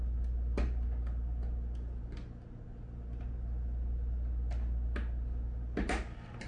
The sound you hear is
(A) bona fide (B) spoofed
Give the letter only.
A